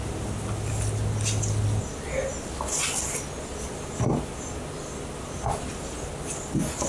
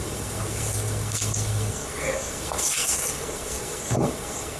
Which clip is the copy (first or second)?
second